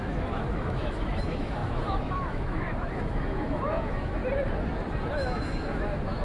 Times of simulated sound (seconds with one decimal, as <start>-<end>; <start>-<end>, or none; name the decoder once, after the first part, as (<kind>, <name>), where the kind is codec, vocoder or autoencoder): 0.0-4.2 (autoencoder, DAC-VAE); 5.1-6.2